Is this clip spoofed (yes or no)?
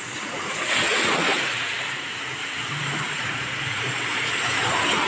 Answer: yes